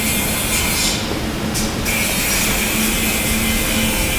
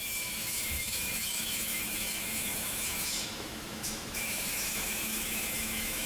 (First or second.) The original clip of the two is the first